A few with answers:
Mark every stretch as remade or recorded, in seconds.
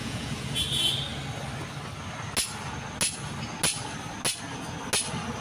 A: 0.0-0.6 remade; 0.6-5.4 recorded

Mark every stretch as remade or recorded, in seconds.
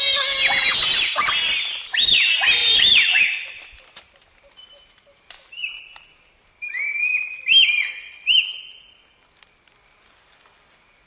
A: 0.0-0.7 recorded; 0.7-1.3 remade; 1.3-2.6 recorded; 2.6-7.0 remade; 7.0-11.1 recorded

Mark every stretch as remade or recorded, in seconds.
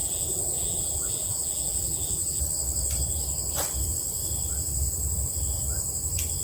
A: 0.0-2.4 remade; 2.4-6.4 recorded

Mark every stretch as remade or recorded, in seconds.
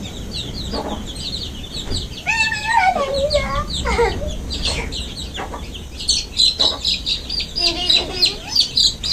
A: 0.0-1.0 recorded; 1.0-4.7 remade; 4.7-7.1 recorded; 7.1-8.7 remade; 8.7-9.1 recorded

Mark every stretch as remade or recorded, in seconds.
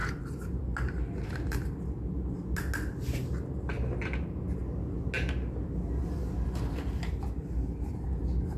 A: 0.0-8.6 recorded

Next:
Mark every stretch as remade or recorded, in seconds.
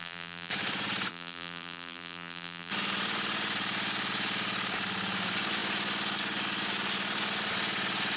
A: 0.0-0.5 remade; 0.5-1.1 recorded; 1.1-2.7 remade; 2.7-8.2 recorded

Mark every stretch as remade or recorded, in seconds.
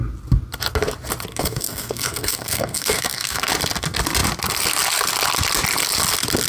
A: 0.0-1.3 recorded; 1.3-3.5 remade; 3.5-6.5 recorded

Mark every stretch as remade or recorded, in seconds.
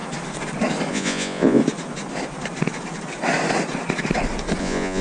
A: 0.0-0.9 recorded; 0.9-1.6 remade; 1.6-4.6 recorded; 4.6-5.0 remade